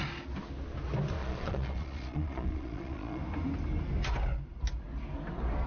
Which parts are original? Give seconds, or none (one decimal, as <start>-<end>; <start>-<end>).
0.0-1.2; 3.2-5.7